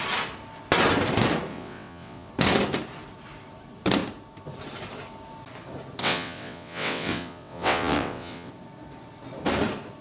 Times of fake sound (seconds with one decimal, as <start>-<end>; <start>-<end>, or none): 1.5-2.3; 6.0-8.5